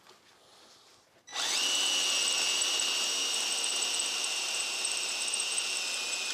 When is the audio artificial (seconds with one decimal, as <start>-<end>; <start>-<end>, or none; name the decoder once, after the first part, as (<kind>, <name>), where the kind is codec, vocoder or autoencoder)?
3.2-5.8 (vocoder, BigVGAN v2)